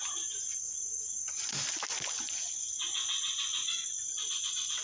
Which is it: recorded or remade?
recorded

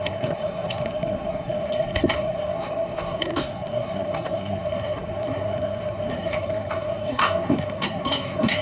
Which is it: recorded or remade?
remade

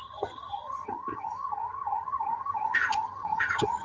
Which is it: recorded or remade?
remade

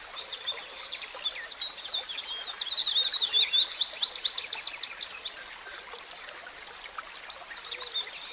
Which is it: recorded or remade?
recorded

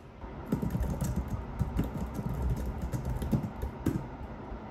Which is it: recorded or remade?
recorded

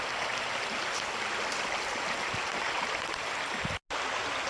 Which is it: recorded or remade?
recorded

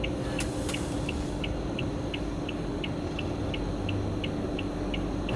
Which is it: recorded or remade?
recorded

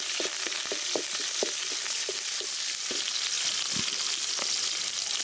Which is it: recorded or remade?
recorded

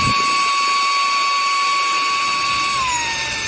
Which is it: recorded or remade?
recorded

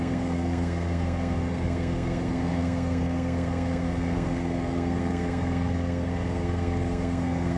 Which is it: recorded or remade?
remade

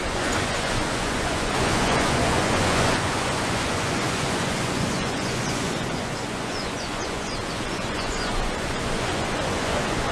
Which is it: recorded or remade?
remade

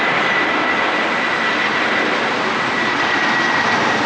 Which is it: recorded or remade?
recorded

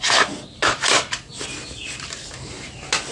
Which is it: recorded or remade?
recorded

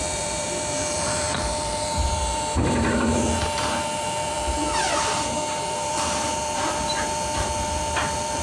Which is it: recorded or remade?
remade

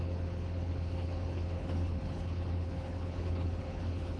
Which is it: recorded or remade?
remade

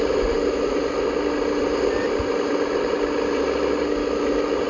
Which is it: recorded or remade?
recorded